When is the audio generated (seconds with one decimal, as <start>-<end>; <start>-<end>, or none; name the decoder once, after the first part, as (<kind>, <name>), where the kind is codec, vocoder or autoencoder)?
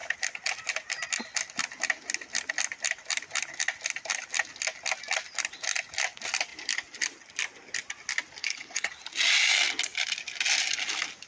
8.4-8.9 (codec, HILCodec)